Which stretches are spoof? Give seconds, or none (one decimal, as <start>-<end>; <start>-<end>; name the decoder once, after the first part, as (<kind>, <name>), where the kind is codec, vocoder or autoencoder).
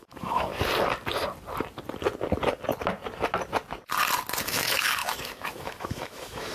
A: 0.0-0.5 (autoencoder, DAC-VAE); 4.4-6.5